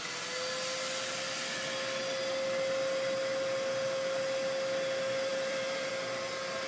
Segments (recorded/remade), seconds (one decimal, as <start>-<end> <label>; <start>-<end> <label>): 0.0-5.3 recorded; 5.3-5.9 remade; 5.9-6.7 recorded